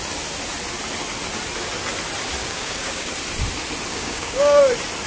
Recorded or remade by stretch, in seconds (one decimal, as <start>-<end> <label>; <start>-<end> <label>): 0.0-2.4 recorded; 2.4-3.1 remade; 3.1-3.9 recorded; 3.9-4.6 remade; 4.6-5.1 recorded